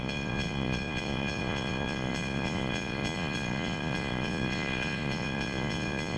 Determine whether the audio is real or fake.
fake